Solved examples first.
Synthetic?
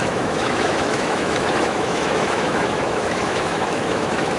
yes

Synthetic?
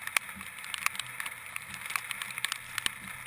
no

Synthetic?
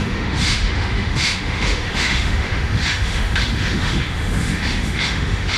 yes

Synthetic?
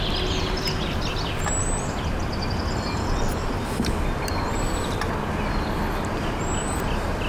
no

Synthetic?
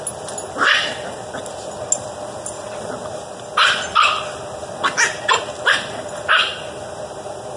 no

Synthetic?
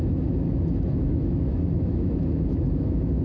yes